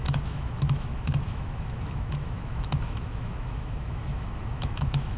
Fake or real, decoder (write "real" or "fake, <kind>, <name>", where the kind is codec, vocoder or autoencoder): fake, autoencoder, DAC-VAE